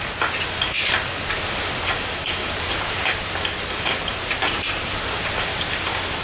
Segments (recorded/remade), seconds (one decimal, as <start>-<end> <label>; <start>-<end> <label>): 0.0-2.4 recorded; 2.4-3.3 remade; 3.3-4.1 recorded; 4.1-5.3 remade; 5.3-6.2 recorded